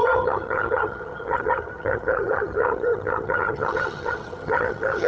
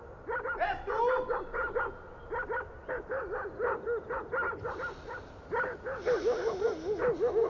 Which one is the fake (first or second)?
first